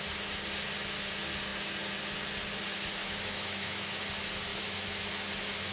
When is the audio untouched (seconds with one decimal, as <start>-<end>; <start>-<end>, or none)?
0.0-3.0; 4.0-4.5; 5.3-5.7